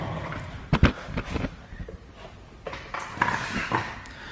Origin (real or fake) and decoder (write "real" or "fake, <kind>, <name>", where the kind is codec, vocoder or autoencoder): real